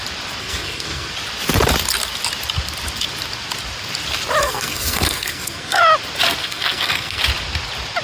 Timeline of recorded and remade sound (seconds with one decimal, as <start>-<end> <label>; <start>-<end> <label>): 0.0-0.4 recorded; 0.4-1.1 remade; 1.1-4.4 recorded; 4.4-5.8 remade; 5.8-6.4 recorded; 6.4-7.2 remade; 7.2-8.0 recorded